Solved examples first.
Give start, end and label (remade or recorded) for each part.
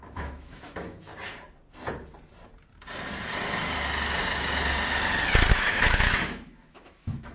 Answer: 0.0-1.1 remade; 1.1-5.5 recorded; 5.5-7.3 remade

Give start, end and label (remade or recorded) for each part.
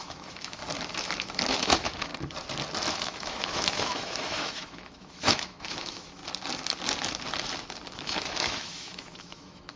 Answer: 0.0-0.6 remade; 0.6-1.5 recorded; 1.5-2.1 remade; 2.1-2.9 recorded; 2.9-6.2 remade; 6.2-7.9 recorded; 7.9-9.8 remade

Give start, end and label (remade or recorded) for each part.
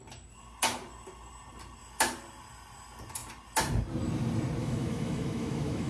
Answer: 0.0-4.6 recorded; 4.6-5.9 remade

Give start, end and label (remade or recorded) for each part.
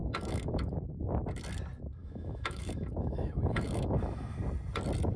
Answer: 0.0-1.1 remade; 1.1-2.0 recorded; 2.0-4.4 remade; 4.4-5.2 recorded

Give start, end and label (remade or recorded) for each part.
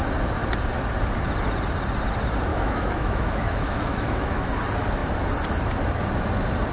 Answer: 0.0-2.5 recorded; 2.5-4.5 remade; 4.5-6.7 recorded